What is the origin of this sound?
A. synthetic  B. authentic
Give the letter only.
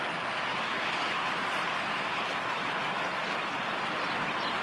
B